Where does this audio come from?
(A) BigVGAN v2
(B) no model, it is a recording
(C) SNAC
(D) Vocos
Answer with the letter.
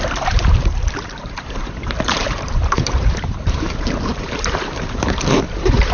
A